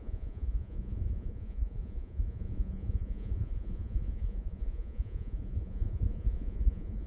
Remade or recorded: remade